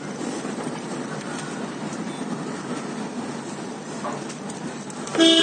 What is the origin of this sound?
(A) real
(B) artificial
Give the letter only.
A